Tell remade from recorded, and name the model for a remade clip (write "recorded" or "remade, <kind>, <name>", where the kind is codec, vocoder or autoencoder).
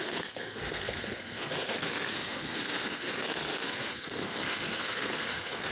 remade, codec, SNAC